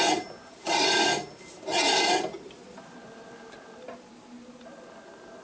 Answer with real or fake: real